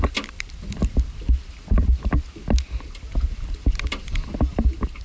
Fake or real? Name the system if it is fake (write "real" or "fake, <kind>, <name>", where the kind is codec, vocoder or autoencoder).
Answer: real